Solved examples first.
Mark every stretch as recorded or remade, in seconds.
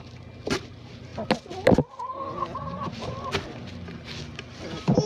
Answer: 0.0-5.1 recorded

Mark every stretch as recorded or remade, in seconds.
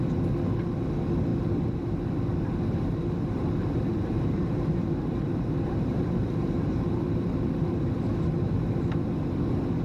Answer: 0.0-4.0 recorded; 4.0-7.3 remade; 7.3-9.8 recorded